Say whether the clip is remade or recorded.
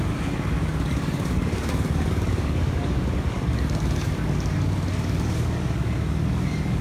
remade